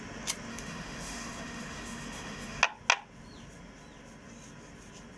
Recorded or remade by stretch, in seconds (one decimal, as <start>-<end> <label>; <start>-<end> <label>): 0.0-0.5 recorded; 0.5-2.6 remade; 2.6-5.2 recorded